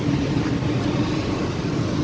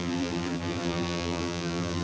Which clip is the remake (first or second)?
second